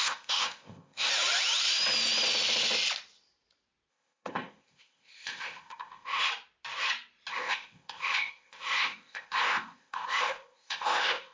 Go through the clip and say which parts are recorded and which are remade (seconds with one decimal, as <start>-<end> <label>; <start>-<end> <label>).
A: 0.0-1.1 remade; 1.1-3.9 recorded; 3.9-6.2 remade; 6.2-7.3 recorded; 7.3-11.3 remade